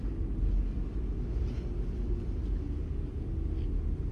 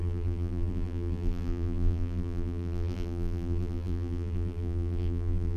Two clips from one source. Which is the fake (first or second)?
second